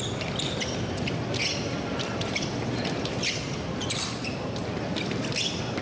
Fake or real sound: real